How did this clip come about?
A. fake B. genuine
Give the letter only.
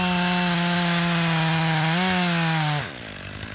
B